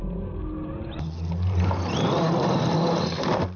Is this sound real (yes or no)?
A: yes